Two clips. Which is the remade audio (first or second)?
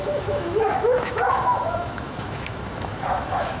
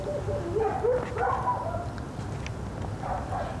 first